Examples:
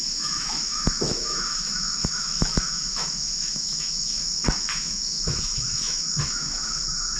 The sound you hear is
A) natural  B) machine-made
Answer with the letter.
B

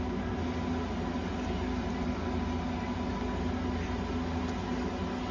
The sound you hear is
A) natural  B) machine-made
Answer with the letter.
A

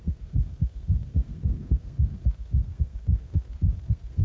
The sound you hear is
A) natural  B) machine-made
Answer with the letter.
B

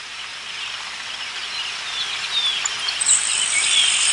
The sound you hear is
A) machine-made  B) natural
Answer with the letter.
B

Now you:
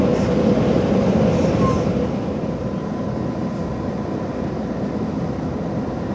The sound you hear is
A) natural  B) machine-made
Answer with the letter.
A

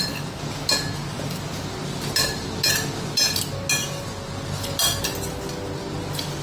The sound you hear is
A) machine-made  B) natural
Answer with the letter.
B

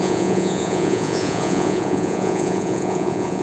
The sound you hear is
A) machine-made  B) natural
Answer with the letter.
A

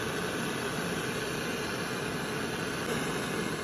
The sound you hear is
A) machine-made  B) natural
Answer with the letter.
B